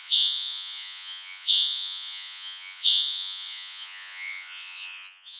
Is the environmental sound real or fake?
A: fake